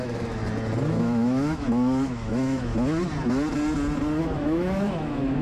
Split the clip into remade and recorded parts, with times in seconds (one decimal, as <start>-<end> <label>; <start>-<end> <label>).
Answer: 0.0-0.4 remade; 0.4-1.0 recorded; 1.0-2.7 remade; 2.7-4.2 recorded; 4.2-5.4 remade